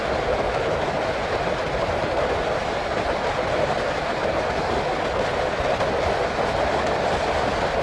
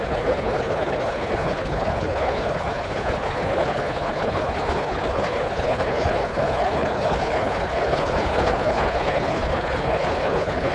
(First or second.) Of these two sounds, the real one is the first